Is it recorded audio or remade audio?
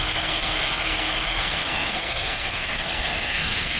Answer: remade